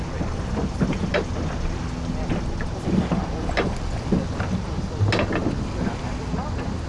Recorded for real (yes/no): yes